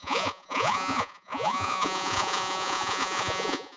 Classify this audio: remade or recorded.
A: remade